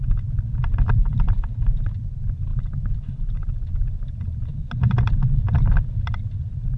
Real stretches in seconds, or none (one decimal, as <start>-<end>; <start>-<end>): 0.0-6.8